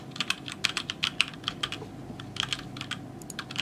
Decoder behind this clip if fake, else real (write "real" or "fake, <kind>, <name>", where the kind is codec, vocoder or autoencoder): real